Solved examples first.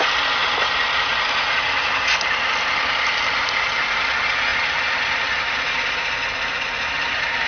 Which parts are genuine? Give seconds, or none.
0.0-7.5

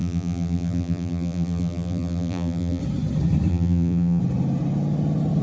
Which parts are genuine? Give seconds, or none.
2.8-3.5; 4.2-5.4

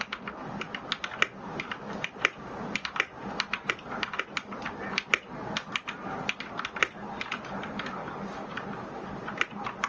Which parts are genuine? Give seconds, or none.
0.0-9.9

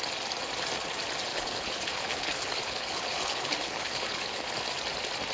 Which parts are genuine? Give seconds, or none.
0.0-1.3; 4.5-5.3

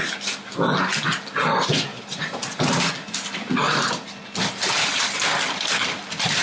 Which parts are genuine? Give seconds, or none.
0.0-1.9; 2.9-6.4

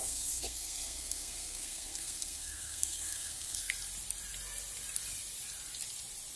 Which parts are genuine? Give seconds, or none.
3.7-6.4

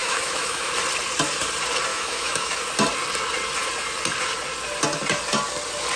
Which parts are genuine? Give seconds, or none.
0.7-1.9; 2.6-6.0

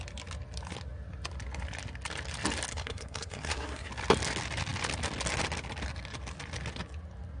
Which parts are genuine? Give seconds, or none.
0.0-2.7; 3.9-7.4